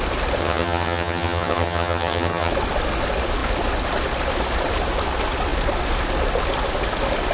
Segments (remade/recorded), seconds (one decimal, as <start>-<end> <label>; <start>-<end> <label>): 0.0-0.4 recorded; 0.4-2.5 remade; 2.5-7.3 recorded